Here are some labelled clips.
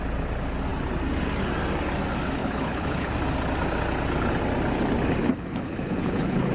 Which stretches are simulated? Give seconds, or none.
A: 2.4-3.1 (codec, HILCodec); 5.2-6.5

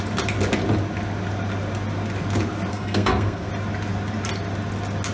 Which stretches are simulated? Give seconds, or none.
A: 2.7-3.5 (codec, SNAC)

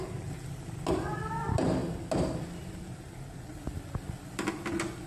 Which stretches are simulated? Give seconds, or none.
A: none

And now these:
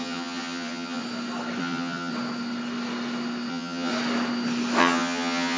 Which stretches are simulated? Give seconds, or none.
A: 0.0-1.0 (vocoder, HiFi-GAN); 1.6-2.1; 3.5-3.9; 4.8-5.6

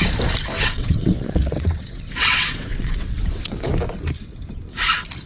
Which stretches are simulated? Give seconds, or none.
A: 0.5-3.7 (vocoder, WaveNeXt)